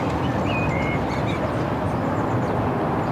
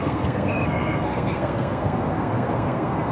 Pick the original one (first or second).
first